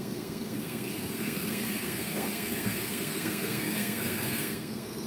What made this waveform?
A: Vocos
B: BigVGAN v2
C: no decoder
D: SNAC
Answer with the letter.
D